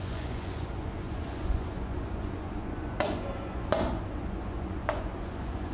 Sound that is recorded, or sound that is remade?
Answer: remade